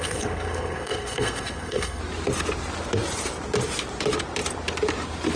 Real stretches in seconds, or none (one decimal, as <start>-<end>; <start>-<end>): 2.0-5.4